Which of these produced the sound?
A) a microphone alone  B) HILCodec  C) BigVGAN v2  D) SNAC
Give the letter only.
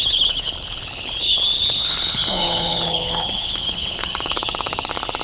B